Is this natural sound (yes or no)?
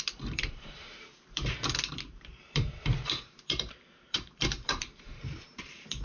no